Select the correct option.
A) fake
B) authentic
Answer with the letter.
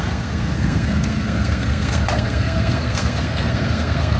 A